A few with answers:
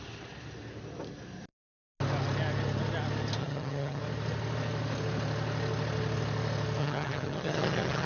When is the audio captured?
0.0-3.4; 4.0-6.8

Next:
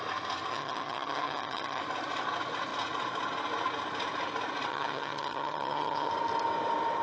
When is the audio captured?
0.0-0.5; 1.8-4.7; 6.1-7.0

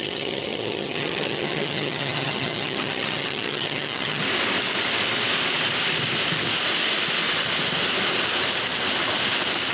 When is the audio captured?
4.2-9.7

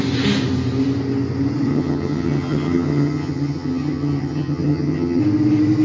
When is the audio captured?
0.0-1.7; 5.2-5.8